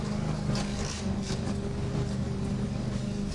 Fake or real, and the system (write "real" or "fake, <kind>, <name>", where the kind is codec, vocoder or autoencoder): fake, codec, DAC